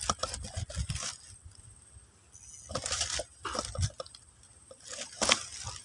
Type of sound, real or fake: real